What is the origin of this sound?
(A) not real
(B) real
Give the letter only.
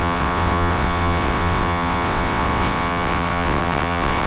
A